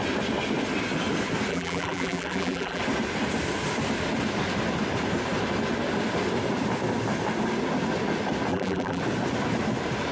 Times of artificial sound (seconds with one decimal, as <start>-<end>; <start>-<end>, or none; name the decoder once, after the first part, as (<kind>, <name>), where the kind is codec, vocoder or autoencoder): 1.5-2.8 (vocoder, BigVGAN v2); 8.5-9.0